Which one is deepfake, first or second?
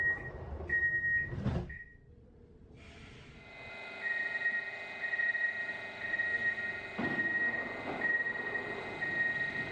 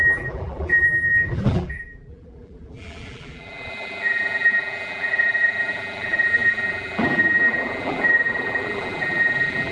second